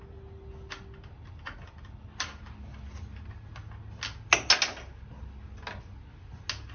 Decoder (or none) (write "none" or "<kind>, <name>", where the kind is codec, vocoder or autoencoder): none